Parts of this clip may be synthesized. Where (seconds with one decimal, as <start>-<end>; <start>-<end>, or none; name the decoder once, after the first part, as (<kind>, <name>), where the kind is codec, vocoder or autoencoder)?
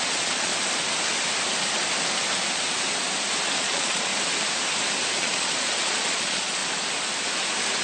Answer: 0.0-0.5 (vocoder, Vocos); 3.6-4.1; 5.2-6.6